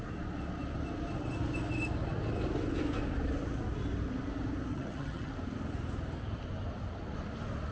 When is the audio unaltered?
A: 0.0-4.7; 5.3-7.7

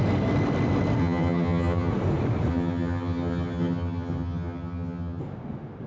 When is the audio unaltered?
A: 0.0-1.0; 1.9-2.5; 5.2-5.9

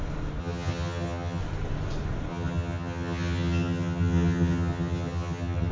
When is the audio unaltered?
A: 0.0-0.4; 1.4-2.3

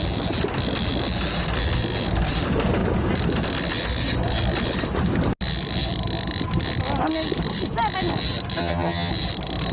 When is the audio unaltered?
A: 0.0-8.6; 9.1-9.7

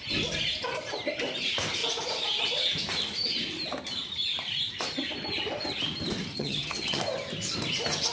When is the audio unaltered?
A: 0.0-6.3; 7.0-8.1